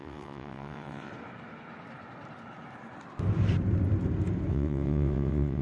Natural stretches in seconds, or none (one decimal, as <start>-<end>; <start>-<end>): 1.1-4.5